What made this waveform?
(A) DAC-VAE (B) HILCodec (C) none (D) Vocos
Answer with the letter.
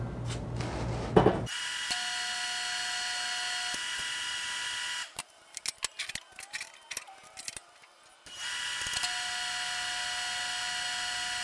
C